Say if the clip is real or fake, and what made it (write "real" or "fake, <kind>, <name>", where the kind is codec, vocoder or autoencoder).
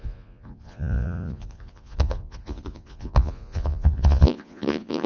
fake, vocoder, Vocos